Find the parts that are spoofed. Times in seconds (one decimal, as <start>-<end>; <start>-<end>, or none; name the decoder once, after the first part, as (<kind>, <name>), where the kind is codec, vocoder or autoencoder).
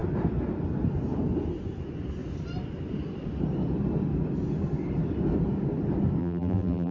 6.2-6.9 (vocoder, BigVGAN v2)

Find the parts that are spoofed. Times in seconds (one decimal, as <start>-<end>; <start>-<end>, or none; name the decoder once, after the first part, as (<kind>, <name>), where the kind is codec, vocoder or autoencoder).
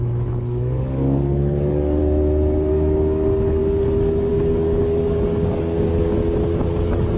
0.0-2.0 (codec, DAC); 2.7-6.2; 6.8-7.2